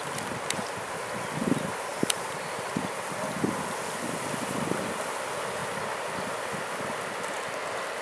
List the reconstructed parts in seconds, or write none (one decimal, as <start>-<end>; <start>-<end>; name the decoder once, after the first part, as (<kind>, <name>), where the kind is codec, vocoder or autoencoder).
1.9-2.7 (vocoder, BigVGAN v2)